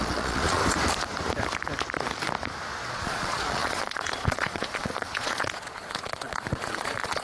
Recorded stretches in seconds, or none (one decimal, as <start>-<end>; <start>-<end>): 0.6-2.9